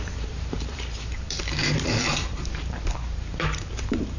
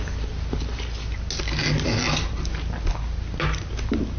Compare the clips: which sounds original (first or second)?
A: second